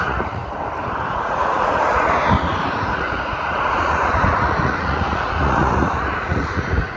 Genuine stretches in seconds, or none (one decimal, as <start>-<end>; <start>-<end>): 0.4-1.1